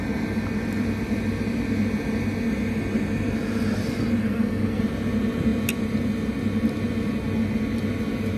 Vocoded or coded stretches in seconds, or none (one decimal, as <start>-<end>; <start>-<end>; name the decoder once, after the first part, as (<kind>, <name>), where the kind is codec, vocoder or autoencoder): 4.2-4.8 (codec, SNAC)